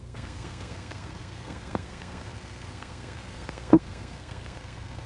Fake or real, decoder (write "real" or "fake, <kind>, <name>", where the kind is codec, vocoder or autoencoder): fake, codec, SNAC